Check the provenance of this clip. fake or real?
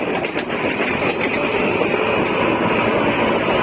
real